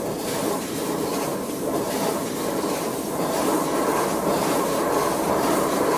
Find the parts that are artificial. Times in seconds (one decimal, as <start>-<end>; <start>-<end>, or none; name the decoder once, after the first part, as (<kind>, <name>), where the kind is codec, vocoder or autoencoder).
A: 0.0-6.0 (vocoder, BigVGAN v2)